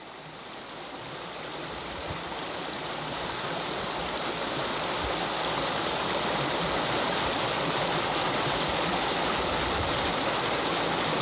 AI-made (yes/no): no